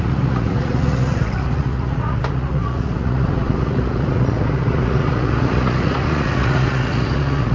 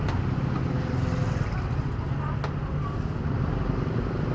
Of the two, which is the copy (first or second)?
first